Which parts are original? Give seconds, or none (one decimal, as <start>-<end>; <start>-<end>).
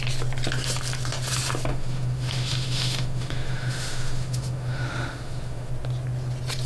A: 0.0-1.7; 5.7-6.7